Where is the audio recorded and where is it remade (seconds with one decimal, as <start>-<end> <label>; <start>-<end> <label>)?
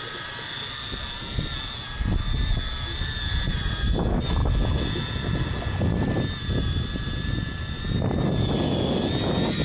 0.0-9.6 recorded